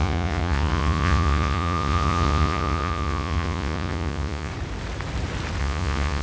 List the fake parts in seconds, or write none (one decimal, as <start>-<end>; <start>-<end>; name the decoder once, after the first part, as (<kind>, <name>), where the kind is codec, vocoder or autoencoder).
0.0-4.5 (vocoder, Vocos); 5.6-6.2